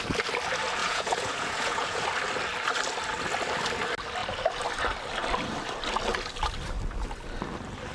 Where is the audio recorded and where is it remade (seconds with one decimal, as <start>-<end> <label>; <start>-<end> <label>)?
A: 0.0-0.8 recorded; 0.8-2.0 remade; 2.0-7.9 recorded

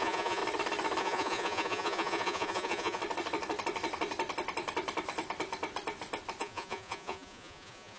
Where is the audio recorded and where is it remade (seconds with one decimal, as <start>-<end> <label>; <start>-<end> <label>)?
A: 0.0-0.4 remade; 0.4-1.0 recorded; 1.0-3.0 remade; 3.0-6.4 recorded; 6.4-8.0 remade

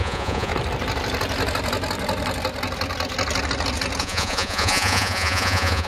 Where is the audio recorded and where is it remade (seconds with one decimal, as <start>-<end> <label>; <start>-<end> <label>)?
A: 0.0-0.5 remade; 0.5-4.0 recorded; 4.0-5.9 remade

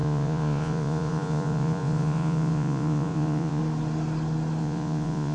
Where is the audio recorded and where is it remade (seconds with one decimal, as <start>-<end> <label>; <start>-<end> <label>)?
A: 0.0-3.6 remade; 3.6-4.6 recorded; 4.6-5.3 remade

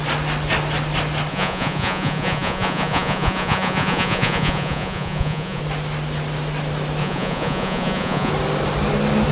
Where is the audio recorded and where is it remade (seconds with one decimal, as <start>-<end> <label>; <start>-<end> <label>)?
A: 0.0-1.3 recorded; 1.3-5.6 remade; 5.6-7.0 recorded; 7.0-8.3 remade; 8.3-9.3 recorded

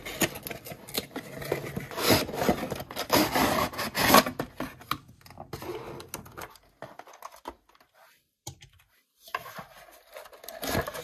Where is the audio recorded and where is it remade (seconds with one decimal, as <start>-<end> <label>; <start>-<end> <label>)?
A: 0.0-11.0 recorded